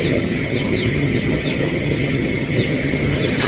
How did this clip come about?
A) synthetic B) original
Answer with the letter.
A